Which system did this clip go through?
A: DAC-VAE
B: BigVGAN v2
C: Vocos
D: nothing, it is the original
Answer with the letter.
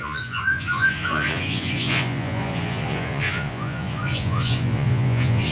C